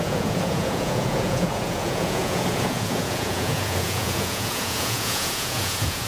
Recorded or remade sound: remade